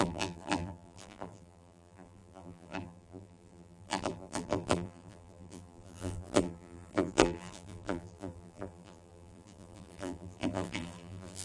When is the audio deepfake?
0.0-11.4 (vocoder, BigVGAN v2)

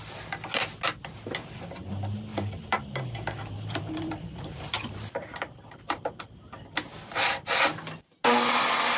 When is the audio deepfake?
2.3-5.8 (vocoder, BigVGAN v2)

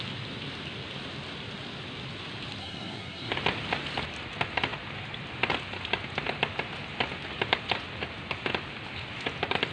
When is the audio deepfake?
2.6-3.3 (codec, SNAC)